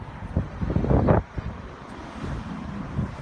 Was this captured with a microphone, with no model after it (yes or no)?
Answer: yes